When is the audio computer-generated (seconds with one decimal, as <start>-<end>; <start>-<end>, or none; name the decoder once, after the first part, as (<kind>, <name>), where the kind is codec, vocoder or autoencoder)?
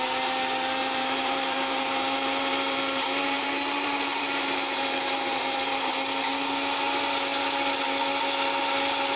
0.8-5.9 (vocoder, BigVGAN v2)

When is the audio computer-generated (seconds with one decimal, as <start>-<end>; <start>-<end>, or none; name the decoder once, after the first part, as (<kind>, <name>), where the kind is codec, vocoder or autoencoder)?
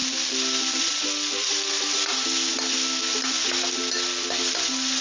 1.7-2.5 (vocoder, BigVGAN v2)